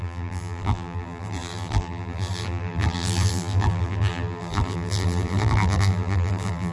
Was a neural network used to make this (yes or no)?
yes